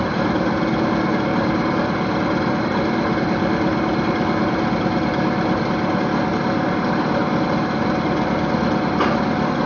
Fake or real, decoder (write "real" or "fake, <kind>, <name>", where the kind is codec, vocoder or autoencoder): real